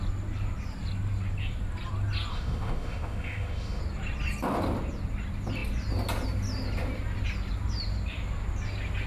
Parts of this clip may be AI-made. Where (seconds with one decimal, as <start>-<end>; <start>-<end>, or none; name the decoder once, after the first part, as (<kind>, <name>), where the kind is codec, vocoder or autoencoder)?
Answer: 2.3-3.8 (autoencoder, DAC-VAE)